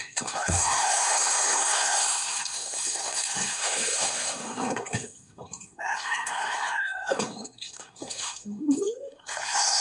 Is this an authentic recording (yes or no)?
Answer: no